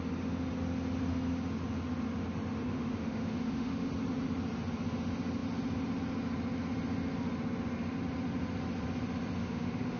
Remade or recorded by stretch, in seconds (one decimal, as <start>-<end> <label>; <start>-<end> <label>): 0.0-2.7 recorded; 2.7-3.9 remade; 3.9-9.4 recorded; 9.4-10.0 remade

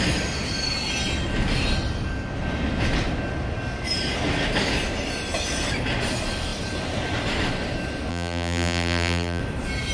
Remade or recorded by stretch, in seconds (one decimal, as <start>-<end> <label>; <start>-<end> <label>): 0.0-8.1 recorded; 8.1-9.4 remade; 9.4-9.9 recorded

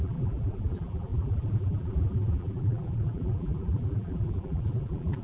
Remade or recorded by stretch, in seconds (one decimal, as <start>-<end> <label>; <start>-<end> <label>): 0.0-5.2 remade

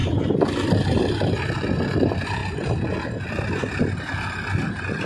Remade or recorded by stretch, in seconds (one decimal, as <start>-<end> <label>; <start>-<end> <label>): 0.0-5.1 recorded

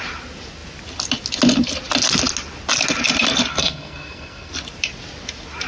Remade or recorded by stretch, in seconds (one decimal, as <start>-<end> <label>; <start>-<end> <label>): 0.0-3.5 recorded; 3.5-4.5 remade; 4.5-5.7 recorded

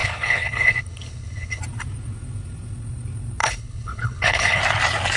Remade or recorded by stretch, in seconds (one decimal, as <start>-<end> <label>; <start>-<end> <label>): 0.0-1.6 remade; 1.6-3.4 recorded; 3.4-4.6 remade; 4.6-5.2 recorded